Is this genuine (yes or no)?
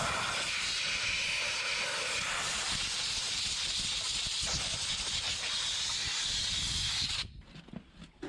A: yes